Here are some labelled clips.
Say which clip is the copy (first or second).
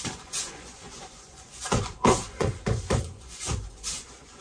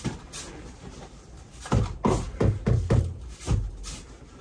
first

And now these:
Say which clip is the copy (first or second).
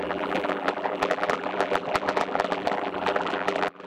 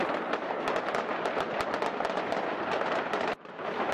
first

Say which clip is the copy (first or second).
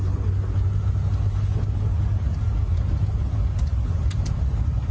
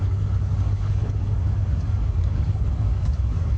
second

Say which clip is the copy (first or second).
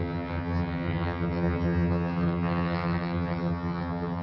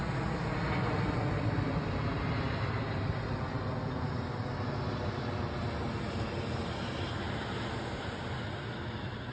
first